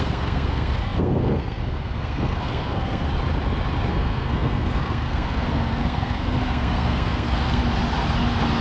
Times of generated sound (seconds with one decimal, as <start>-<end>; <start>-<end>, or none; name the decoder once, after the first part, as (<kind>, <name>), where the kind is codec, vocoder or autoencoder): 0.0-3.1 (codec, SNAC); 3.9-7.6